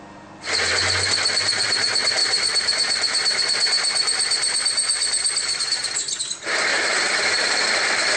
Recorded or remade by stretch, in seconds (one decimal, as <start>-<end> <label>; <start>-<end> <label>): 0.0-2.2 recorded; 2.2-6.2 remade; 6.2-6.7 recorded; 6.7-8.2 remade